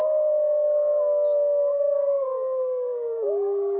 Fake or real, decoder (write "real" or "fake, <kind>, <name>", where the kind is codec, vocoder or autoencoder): real